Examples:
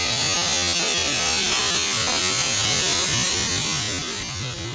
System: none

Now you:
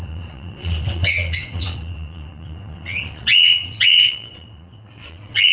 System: vocoder, WaveNeXt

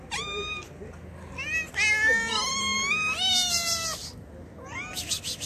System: none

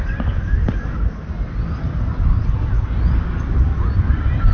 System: none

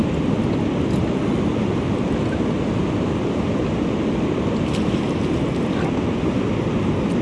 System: none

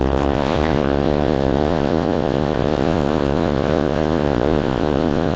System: vocoder, Vocos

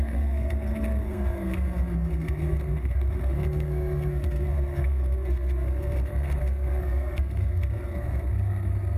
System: codec, SNAC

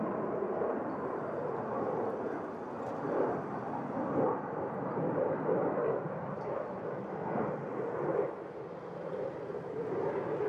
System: none